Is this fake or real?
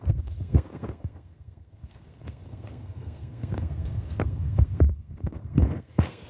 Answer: fake